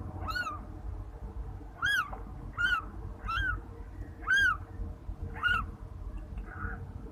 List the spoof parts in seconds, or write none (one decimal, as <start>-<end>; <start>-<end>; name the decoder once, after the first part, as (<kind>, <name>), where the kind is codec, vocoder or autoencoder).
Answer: 5.2-5.8 (vocoder, BigVGAN v2)